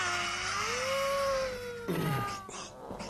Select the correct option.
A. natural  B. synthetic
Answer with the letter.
A